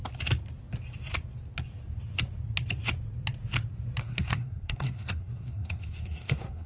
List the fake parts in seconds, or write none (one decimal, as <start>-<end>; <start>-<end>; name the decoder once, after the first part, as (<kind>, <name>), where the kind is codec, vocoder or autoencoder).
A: 4.0-6.7 (codec, SNAC)